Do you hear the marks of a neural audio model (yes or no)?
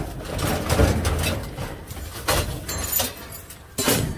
no